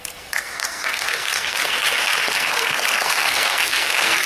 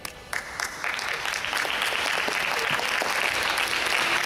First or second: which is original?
second